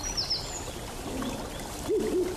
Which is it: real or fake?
real